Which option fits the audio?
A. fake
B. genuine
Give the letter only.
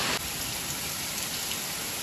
B